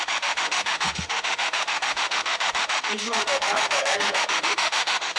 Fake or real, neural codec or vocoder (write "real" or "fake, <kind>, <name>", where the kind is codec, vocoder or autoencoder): fake, autoencoder, DAC-VAE